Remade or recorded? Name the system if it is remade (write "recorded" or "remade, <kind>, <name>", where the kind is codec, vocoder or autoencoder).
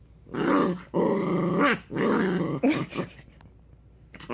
recorded